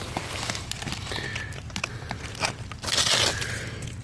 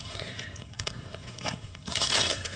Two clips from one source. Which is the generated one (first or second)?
second